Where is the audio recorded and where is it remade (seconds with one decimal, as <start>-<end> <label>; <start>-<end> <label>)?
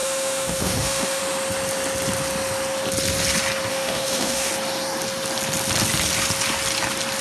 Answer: 0.0-1.2 remade; 1.2-3.7 recorded; 3.7-4.5 remade; 4.5-7.2 recorded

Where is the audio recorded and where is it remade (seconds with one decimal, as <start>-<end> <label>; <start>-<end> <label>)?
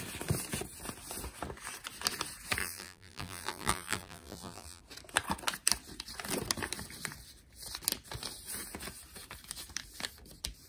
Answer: 0.0-2.6 recorded; 2.6-4.8 remade; 4.8-10.7 recorded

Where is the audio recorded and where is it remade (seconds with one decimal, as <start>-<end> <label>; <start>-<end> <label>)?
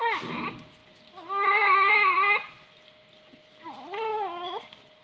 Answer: 0.0-5.0 recorded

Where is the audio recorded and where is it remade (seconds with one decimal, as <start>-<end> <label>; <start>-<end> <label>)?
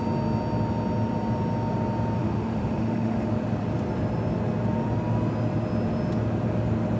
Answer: 0.0-2.2 recorded; 2.2-3.3 remade; 3.3-7.0 recorded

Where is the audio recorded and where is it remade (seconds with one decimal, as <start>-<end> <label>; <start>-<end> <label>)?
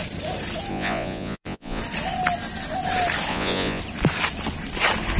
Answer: 0.0-0.7 recorded; 0.7-1.8 remade; 1.8-3.3 recorded; 3.3-3.8 remade; 3.8-5.2 recorded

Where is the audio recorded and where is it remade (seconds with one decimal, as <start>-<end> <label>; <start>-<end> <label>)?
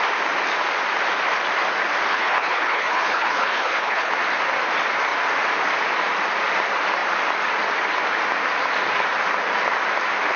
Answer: 0.0-2.1 recorded; 2.1-4.1 remade; 4.1-10.4 recorded